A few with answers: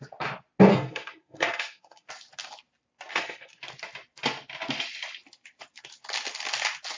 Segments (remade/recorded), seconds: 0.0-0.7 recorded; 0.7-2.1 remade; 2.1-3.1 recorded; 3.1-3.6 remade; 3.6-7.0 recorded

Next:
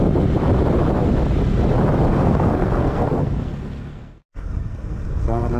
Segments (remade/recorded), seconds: 0.0-2.1 recorded; 2.1-5.6 remade

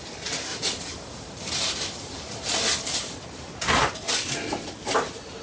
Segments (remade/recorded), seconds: 0.0-5.4 recorded

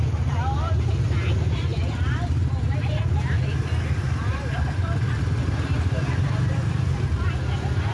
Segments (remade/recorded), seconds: 0.0-7.9 recorded

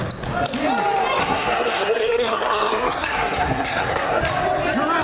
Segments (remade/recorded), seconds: 0.0-1.2 recorded; 1.2-4.2 remade; 4.2-5.0 recorded

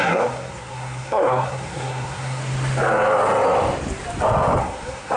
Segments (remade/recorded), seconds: 0.0-2.4 remade; 2.4-4.6 recorded; 4.6-5.2 remade

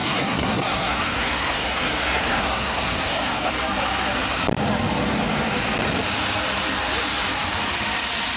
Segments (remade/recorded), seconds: 0.0-3.5 remade; 3.5-8.4 recorded